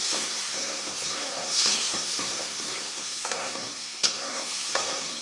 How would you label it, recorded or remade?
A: remade